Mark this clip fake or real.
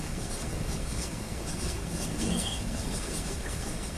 fake